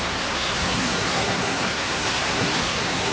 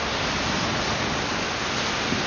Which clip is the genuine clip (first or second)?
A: second